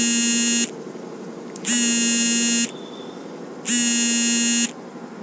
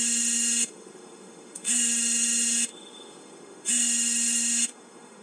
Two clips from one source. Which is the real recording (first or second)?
first